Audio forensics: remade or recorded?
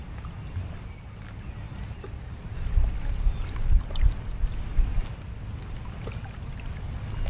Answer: recorded